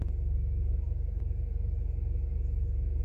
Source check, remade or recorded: recorded